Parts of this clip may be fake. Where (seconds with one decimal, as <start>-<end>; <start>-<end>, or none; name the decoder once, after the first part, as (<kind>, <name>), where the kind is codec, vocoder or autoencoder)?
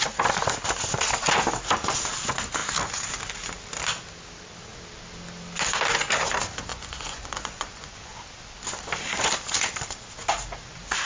6.7-8.2 (vocoder, Vocos)